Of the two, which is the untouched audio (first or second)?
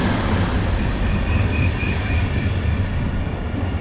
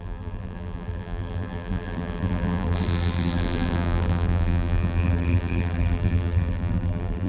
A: first